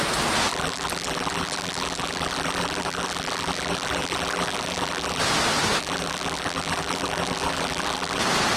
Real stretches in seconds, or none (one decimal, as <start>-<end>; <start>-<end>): 0.0-0.5; 5.2-5.8; 8.2-8.6